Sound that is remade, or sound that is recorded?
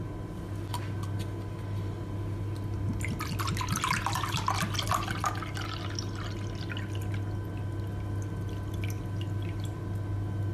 recorded